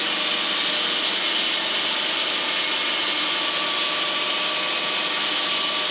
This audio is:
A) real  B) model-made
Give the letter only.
A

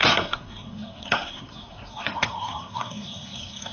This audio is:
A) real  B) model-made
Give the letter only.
B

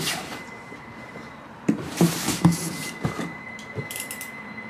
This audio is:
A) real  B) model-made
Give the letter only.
B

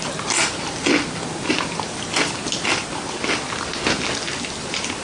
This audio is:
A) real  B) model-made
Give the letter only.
A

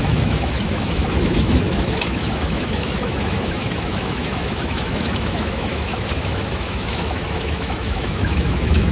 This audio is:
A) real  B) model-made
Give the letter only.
B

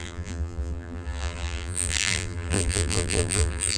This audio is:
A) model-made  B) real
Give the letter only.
A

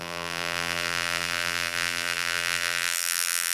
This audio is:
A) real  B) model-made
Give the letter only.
B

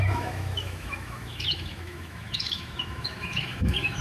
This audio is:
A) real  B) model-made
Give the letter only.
B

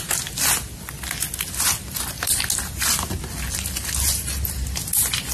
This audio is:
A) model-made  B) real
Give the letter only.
B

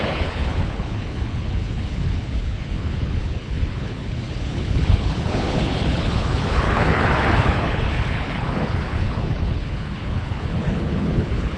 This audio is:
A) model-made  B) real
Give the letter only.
A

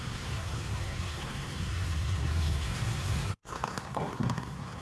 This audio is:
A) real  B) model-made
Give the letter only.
B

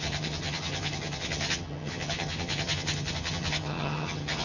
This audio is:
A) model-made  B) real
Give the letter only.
A